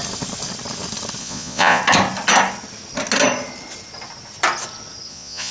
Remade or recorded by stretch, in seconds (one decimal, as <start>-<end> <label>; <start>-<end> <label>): 0.0-1.2 recorded; 1.2-1.8 remade; 1.8-5.1 recorded; 5.1-5.5 remade